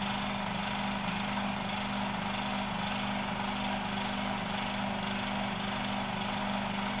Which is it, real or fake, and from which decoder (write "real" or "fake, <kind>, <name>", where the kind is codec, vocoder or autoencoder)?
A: real